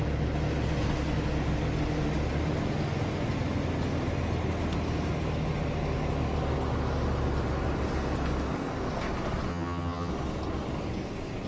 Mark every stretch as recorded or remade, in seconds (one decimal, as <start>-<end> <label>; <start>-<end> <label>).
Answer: 0.0-9.5 recorded; 9.5-10.1 remade; 10.1-11.5 recorded